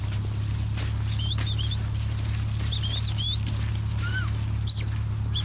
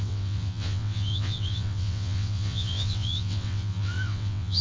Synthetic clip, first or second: second